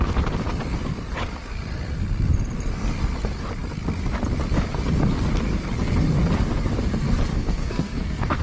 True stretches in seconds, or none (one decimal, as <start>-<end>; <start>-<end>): 0.0-7.3